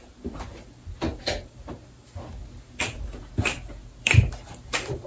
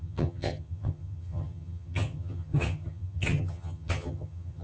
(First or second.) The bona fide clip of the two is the first